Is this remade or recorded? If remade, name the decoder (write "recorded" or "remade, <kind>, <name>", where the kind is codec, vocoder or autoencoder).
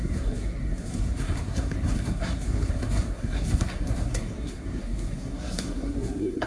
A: remade, codec, SNAC